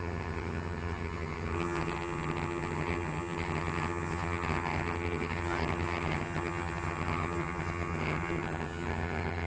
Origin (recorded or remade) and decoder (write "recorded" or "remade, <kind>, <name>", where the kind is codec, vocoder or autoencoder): remade, vocoder, HiFi-GAN